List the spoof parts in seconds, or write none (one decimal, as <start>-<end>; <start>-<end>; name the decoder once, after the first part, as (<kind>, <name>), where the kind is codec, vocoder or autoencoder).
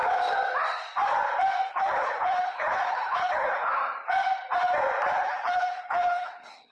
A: 1.7-3.8 (codec, HILCodec); 5.1-6.7